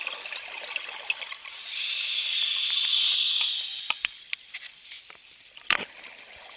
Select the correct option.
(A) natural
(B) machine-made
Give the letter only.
A